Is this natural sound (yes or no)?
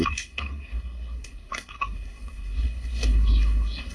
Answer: no